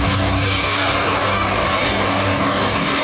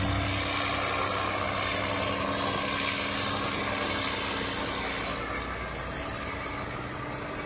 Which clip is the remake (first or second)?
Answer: first